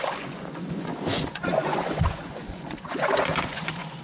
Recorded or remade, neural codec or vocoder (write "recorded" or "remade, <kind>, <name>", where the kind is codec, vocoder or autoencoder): remade, vocoder, Vocos